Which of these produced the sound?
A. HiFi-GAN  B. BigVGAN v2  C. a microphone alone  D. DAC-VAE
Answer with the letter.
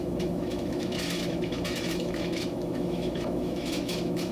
D